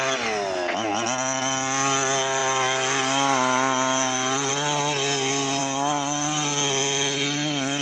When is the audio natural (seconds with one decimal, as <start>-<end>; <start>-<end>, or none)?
0.0-7.8